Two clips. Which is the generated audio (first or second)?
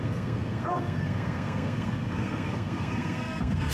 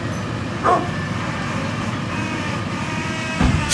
first